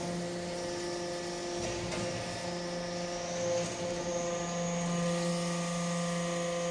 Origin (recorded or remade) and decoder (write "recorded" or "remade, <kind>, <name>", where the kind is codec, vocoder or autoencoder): recorded